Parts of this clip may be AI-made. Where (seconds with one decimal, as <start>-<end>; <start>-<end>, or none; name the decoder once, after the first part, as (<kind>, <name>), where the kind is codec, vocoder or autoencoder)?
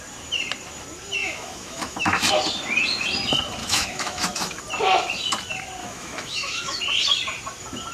1.2-2.3 (autoencoder, DAC-VAE); 3.6-4.6; 5.8-6.8